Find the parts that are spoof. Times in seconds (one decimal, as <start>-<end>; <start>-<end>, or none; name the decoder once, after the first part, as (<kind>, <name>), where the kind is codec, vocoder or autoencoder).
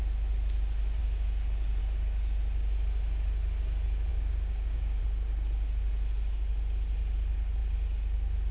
4.1-5.0 (codec, DAC)